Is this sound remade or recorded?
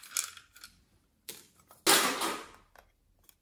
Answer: recorded